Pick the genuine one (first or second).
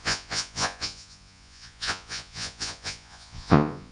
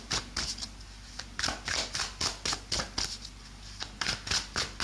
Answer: second